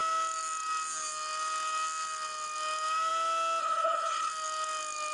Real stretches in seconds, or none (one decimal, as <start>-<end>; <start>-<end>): 0.0-3.6; 4.3-5.1

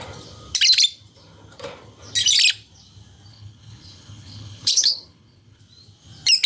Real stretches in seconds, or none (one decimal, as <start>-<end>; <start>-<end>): 0.0-3.3; 5.6-6.5